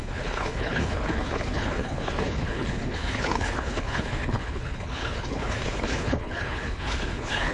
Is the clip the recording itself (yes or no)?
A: no